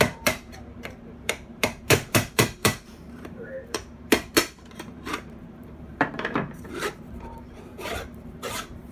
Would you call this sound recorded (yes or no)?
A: no